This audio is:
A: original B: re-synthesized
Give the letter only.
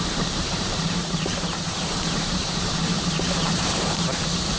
B